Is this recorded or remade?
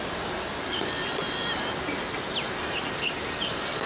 recorded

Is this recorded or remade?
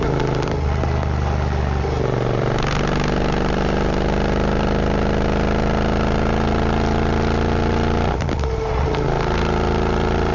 recorded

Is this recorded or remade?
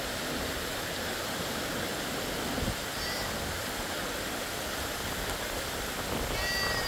recorded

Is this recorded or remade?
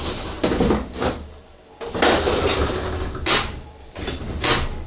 recorded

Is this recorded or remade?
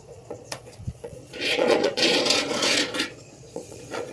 remade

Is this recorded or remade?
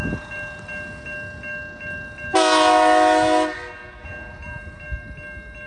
recorded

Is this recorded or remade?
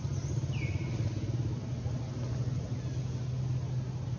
recorded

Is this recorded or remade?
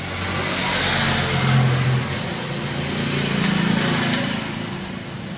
recorded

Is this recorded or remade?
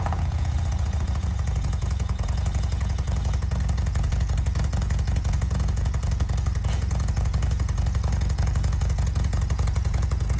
remade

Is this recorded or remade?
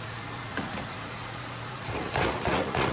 remade